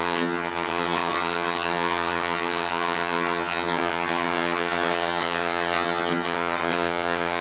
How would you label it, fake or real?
fake